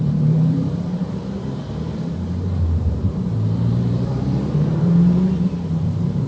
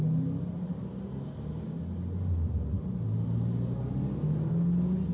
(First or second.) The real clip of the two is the second